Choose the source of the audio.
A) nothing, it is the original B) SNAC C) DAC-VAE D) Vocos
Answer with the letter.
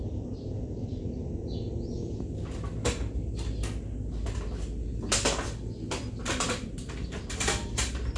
A